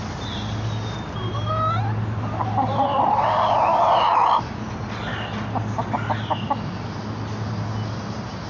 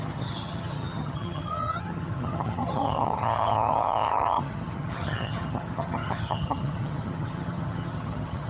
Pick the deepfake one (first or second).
second